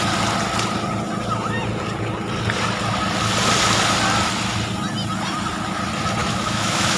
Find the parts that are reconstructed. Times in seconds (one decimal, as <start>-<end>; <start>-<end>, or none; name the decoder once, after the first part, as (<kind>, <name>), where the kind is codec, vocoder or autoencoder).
6.2-7.0 (autoencoder, DAC-VAE)